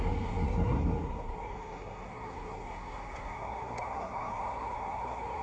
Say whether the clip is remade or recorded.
remade